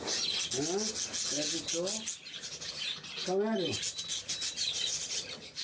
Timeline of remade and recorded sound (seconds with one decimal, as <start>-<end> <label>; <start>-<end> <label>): 0.0-5.6 recorded